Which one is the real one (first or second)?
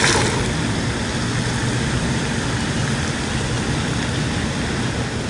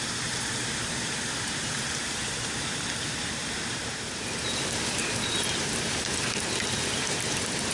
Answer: first